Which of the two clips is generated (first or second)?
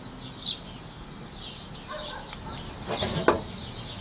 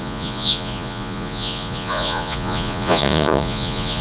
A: second